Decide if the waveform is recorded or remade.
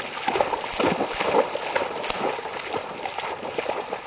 recorded